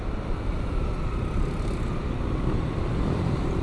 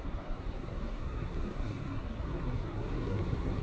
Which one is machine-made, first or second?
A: second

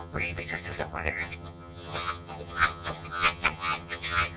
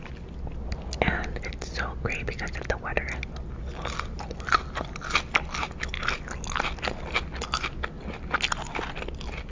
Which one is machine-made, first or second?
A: first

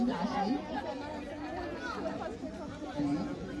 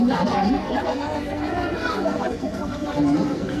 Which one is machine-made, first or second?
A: second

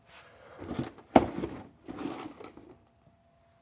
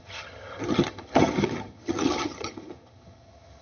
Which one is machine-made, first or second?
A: second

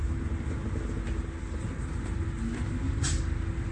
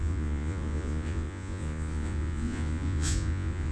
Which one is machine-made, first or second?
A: second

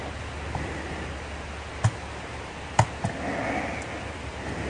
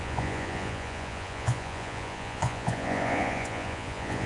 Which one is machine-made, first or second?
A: second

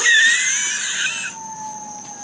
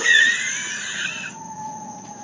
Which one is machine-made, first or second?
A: second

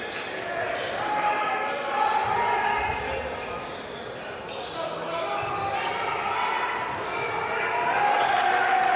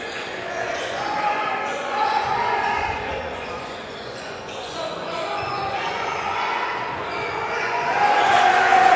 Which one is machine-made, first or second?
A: second